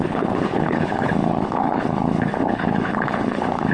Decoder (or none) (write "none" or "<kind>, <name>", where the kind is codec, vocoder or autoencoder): codec, HILCodec